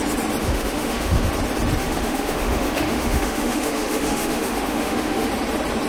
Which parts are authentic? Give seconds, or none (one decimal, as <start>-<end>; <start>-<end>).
0.0-0.4; 1.3-1.8; 5.3-5.9

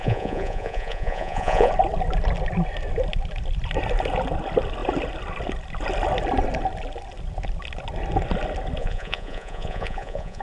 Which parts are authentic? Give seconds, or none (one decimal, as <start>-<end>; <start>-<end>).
1.7-8.8

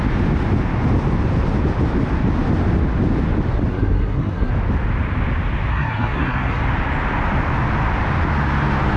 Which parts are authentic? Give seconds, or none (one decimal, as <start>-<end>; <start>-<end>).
0.0-3.7; 4.5-5.7; 6.6-9.0

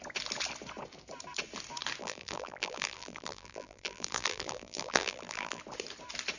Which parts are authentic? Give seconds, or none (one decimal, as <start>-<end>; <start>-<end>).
0.0-2.0; 5.6-6.4

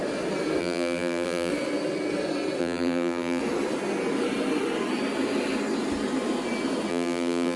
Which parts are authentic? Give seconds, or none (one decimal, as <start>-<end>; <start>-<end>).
0.0-0.6; 1.5-2.6; 3.4-6.9

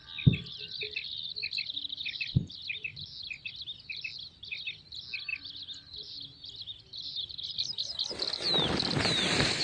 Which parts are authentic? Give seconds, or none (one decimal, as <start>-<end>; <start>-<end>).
3.5-5.3

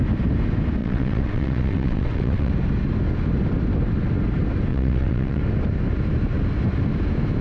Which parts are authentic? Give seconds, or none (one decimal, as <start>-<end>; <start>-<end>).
0.0-0.8; 2.5-4.7; 5.4-7.4

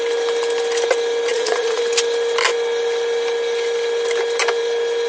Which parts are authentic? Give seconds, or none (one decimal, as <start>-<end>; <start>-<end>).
0.0-1.3; 1.8-5.1